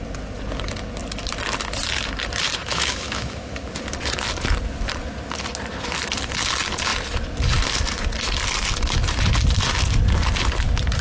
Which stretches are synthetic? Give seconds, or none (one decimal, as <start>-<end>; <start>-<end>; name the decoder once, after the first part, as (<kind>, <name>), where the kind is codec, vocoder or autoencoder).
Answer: 2.5-3.5 (autoencoder, DAC-VAE)